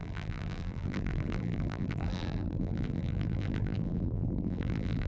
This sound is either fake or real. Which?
fake